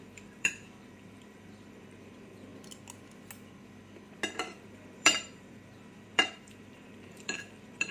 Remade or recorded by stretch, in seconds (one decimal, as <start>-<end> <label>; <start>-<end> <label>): 0.0-2.5 remade; 2.5-4.3 recorded; 4.3-7.9 remade